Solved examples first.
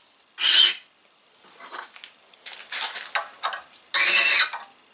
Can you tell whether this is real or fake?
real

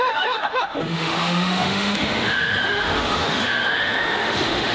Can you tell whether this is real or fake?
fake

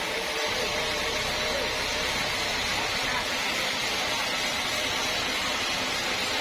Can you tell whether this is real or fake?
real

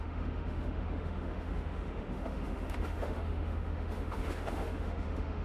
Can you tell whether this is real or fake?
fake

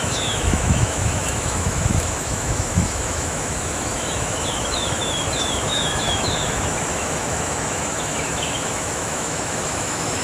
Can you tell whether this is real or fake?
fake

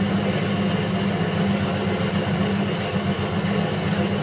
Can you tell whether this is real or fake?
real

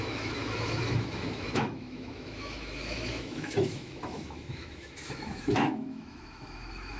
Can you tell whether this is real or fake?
fake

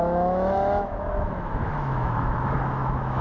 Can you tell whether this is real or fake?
fake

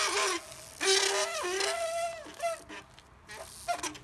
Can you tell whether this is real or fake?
real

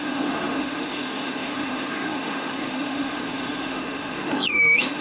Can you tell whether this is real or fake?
fake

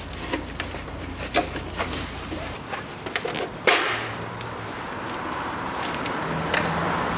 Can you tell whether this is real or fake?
real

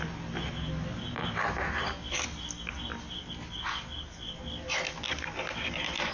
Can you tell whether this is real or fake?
real